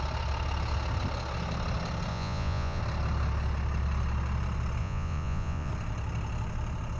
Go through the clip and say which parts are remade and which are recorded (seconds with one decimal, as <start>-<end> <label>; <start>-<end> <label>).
0.0-2.1 recorded; 2.1-2.8 remade; 2.8-4.8 recorded; 4.8-5.7 remade; 5.7-7.0 recorded